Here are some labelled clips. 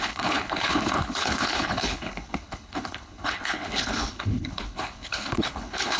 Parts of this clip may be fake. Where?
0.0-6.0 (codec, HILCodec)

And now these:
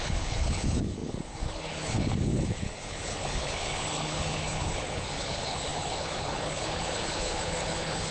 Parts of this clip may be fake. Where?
0.0-8.1 (codec, HILCodec)